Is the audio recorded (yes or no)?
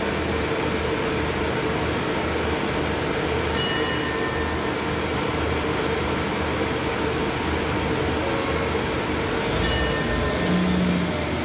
yes